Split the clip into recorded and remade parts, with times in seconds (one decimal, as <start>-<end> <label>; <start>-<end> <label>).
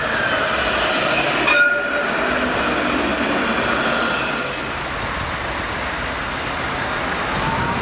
0.0-7.8 recorded